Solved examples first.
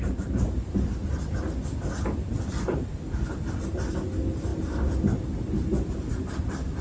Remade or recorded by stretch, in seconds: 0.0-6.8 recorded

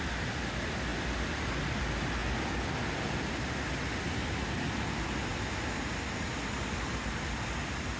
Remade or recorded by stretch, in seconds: 0.0-8.0 recorded